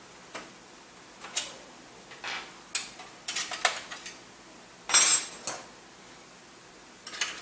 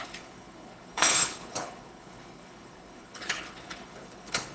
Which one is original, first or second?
first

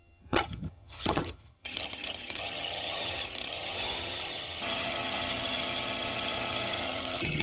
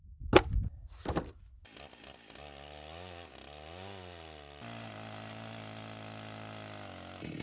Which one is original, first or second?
second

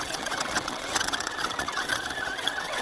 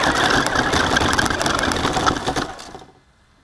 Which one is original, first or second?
second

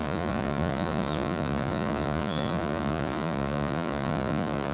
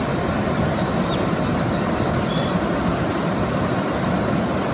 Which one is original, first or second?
second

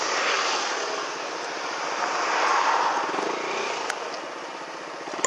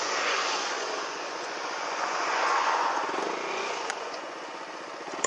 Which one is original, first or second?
first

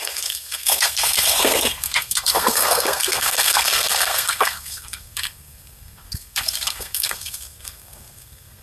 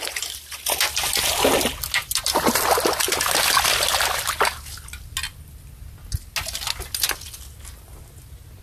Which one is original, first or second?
second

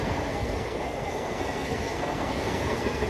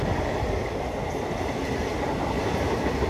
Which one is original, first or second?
second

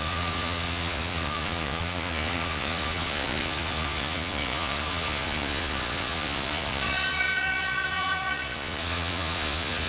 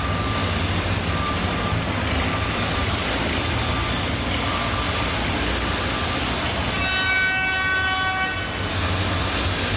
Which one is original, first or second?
second